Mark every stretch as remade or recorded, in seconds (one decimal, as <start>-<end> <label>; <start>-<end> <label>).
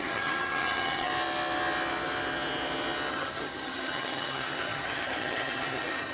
0.0-1.1 remade; 1.1-3.1 recorded; 3.1-6.1 remade